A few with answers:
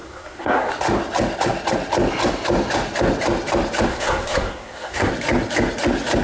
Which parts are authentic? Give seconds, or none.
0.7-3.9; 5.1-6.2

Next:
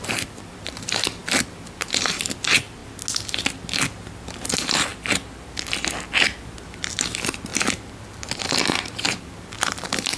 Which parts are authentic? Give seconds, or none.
2.8-4.1; 4.9-6.5

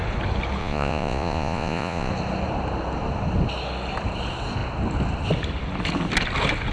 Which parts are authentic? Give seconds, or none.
0.0-0.6; 2.1-6.7

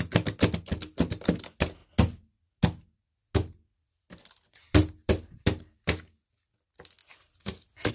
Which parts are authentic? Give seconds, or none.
0.0-7.9

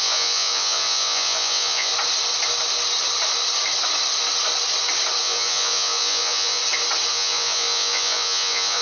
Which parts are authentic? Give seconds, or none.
1.9-5.2; 6.6-7.1

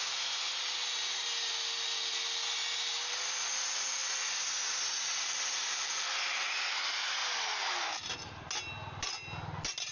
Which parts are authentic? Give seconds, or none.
0.0-7.2; 8.3-9.9

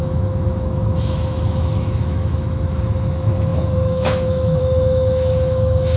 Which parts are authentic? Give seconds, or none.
none

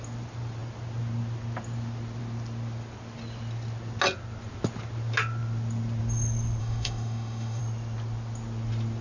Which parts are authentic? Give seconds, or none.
0.0-6.6; 7.6-9.0